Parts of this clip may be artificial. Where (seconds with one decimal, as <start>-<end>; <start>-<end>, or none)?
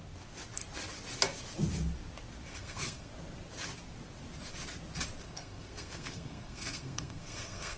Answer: 2.5-3.1; 5.2-7.8